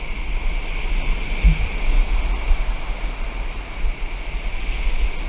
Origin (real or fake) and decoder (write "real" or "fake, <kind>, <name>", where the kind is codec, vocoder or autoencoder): real